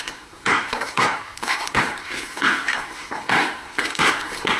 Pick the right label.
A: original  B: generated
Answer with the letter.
B